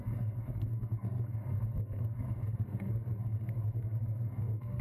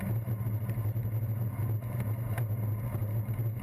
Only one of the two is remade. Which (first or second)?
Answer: first